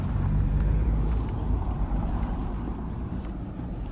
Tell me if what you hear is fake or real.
fake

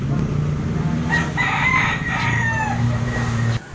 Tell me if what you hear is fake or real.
real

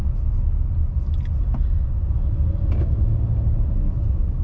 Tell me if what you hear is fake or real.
real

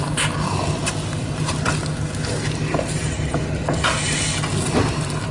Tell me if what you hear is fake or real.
real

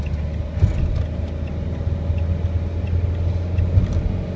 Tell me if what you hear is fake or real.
real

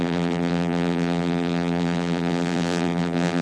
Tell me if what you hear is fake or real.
fake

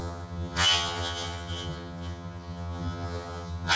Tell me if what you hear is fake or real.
fake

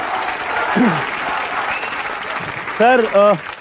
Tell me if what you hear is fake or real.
real